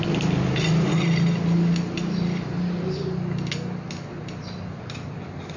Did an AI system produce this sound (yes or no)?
no